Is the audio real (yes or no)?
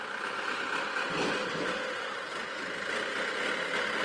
yes